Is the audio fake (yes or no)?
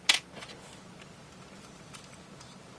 no